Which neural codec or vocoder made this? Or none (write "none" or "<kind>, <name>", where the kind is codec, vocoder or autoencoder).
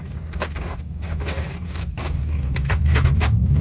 codec, DAC